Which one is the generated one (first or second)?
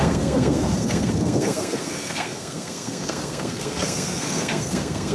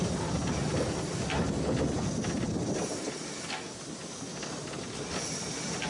first